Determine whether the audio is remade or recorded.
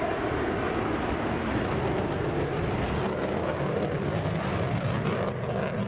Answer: recorded